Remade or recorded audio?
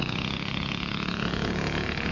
remade